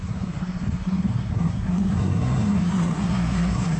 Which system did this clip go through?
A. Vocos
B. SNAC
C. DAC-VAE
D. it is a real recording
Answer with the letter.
B